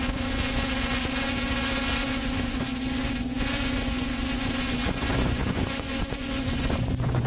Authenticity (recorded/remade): remade